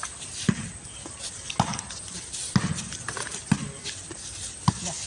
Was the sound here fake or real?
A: real